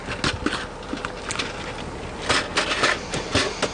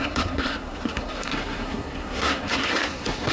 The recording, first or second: first